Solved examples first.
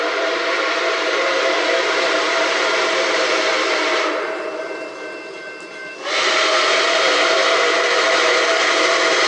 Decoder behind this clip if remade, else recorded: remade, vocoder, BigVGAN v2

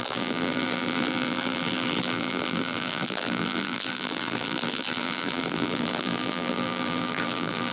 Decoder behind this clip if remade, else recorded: remade, vocoder, BigVGAN v2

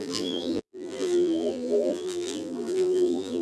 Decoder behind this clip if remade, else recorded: remade, vocoder, BigVGAN v2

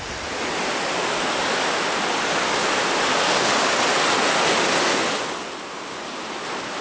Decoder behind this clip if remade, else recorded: recorded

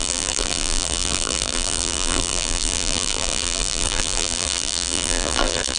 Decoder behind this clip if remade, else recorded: remade, vocoder, BigVGAN v2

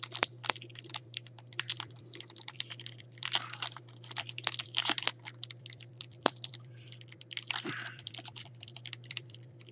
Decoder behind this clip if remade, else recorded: remade, vocoder, BigVGAN v2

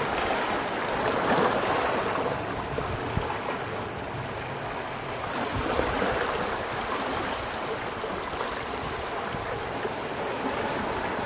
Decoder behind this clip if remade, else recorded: recorded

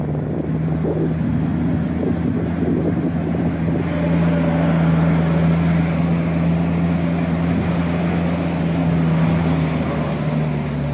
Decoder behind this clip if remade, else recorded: recorded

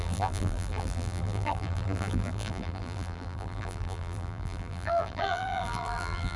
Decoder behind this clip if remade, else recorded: remade, vocoder, BigVGAN v2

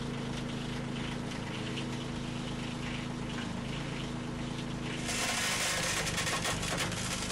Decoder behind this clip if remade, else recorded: recorded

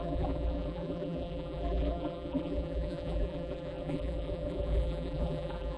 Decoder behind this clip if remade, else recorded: remade, vocoder, BigVGAN v2